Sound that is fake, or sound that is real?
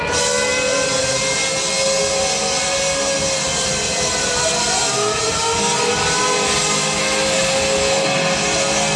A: real